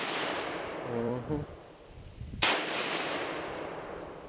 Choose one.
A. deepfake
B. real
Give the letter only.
A